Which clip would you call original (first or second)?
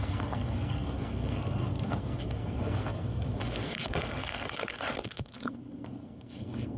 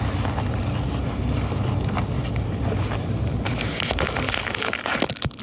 second